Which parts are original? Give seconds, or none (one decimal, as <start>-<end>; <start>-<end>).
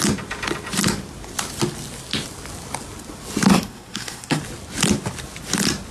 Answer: 0.0-3.5; 4.4-5.9